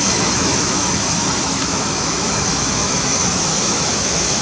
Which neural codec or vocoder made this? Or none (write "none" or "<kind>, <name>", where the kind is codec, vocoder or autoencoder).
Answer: autoencoder, DAC-VAE